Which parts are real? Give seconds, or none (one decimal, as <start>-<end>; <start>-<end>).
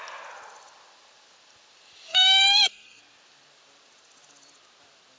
0.0-2.1; 3.0-5.2